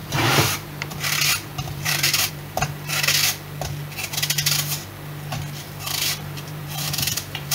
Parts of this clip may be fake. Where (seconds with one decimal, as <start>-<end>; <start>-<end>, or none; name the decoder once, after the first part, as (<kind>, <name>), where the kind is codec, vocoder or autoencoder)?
0.0-2.9 (vocoder, BigVGAN v2); 5.6-7.5